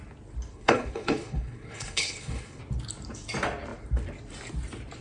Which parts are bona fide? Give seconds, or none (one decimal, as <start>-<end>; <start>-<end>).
0.0-0.5; 2.6-5.0